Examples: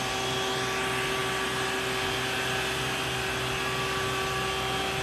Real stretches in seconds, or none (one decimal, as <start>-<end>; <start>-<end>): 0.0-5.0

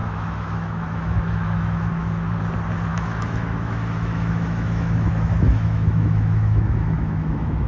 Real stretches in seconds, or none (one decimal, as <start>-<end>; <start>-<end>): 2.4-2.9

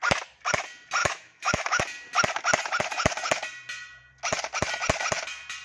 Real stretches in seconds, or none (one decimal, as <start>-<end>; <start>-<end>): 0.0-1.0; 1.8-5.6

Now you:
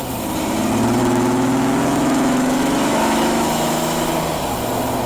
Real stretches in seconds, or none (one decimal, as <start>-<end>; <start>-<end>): 0.0-1.0; 4.1-5.1